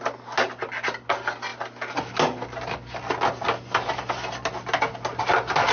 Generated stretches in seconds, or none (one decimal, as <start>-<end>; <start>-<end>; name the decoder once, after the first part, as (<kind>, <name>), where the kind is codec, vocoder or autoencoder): none